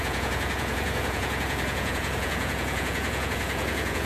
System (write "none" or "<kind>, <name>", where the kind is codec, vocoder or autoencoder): vocoder, Vocos